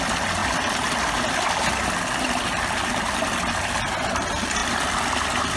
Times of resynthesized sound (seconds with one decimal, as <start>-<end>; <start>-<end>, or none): none